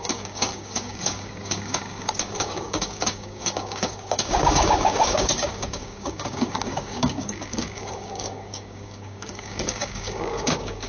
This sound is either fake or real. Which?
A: fake